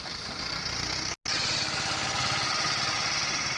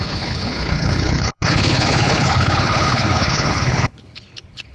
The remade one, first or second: second